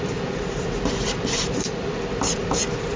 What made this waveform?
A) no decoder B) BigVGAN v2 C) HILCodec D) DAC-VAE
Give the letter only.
B